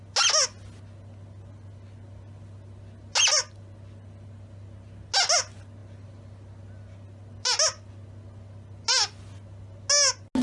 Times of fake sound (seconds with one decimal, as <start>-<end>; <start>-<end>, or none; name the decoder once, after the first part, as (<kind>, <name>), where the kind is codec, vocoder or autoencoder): none